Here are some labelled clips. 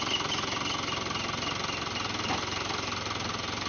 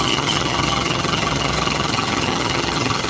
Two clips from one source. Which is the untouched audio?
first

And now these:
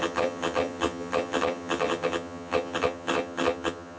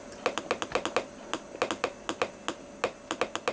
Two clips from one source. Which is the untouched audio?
second